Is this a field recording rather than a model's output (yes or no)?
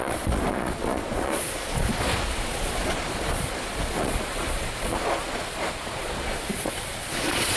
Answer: no